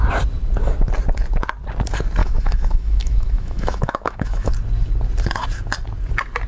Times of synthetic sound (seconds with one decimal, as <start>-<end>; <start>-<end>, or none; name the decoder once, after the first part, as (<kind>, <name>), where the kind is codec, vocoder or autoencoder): 2.2-4.5 (autoencoder, DAC-VAE)